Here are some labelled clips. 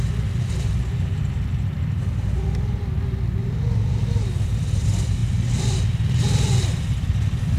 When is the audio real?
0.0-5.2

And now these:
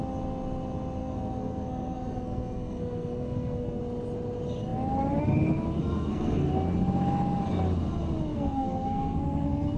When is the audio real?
0.0-1.0; 3.8-5.8; 6.5-8.3

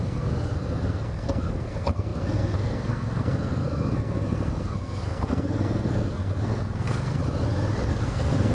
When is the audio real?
7.2-7.9

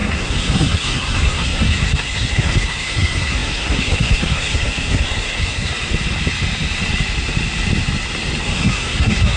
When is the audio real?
5.7-8.4

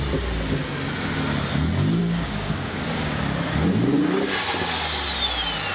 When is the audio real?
0.0-2.0; 3.2-5.7